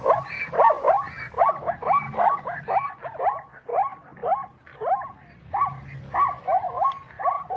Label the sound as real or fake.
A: real